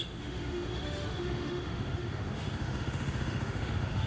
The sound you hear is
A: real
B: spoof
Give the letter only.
B